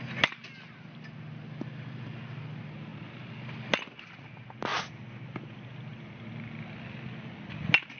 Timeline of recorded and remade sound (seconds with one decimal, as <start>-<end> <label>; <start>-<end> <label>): 0.0-8.0 recorded